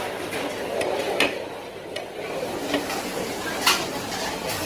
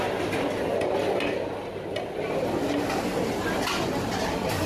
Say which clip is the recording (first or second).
second